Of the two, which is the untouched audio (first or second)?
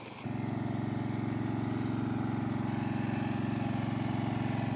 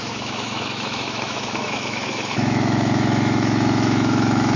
first